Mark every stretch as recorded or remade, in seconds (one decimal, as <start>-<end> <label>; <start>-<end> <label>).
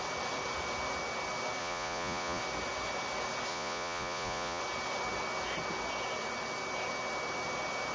0.0-1.6 recorded; 1.6-2.4 remade; 2.4-3.5 recorded; 3.5-4.6 remade; 4.6-7.9 recorded